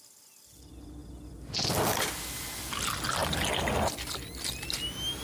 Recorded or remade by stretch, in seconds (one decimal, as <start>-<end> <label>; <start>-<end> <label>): 0.0-5.2 recorded